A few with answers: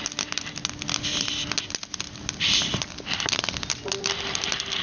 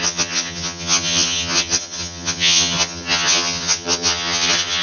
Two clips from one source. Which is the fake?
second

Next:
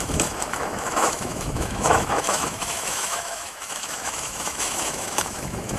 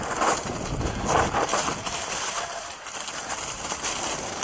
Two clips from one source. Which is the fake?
first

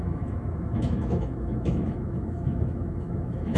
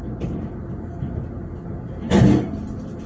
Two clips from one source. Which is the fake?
first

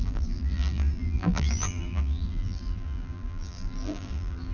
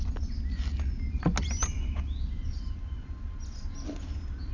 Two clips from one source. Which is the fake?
first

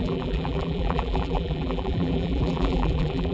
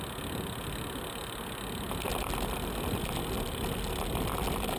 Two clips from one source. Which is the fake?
first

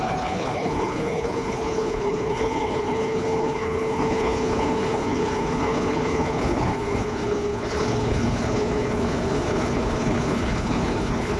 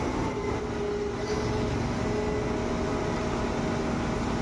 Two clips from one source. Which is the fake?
first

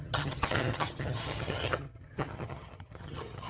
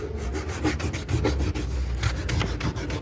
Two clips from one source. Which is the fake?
first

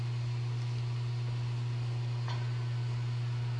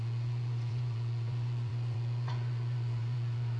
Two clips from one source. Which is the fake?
second